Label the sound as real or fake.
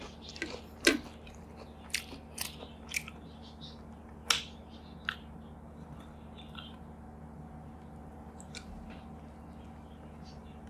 real